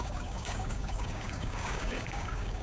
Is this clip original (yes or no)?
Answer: no